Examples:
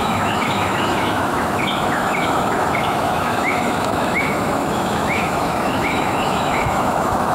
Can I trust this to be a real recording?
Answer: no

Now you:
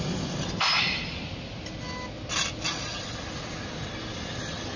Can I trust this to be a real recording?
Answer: yes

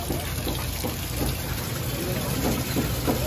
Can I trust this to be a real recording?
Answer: yes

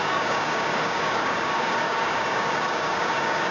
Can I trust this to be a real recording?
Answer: no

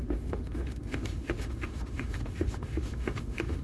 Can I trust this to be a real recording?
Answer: no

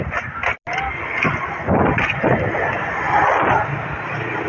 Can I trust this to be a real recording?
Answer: yes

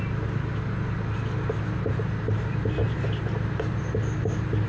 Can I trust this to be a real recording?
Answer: yes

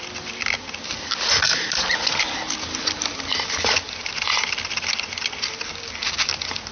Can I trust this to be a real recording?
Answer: yes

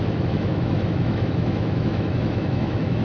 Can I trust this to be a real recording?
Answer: no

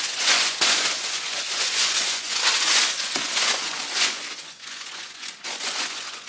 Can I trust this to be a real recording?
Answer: no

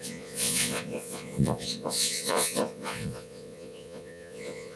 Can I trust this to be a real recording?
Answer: no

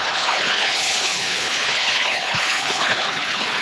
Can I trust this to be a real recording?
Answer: no